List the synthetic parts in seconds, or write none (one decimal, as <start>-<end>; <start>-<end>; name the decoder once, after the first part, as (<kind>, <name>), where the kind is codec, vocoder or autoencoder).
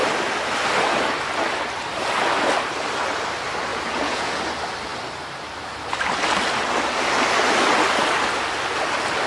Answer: 3.7-4.4 (vocoder, Vocos)